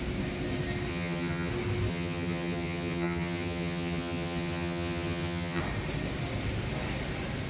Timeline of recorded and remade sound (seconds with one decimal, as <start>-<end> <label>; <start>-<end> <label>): 0.0-0.9 recorded; 0.9-1.5 remade; 1.5-1.9 recorded; 1.9-5.6 remade; 5.6-7.5 recorded